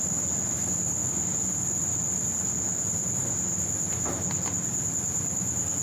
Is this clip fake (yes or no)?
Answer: no